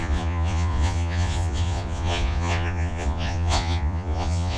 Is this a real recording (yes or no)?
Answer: no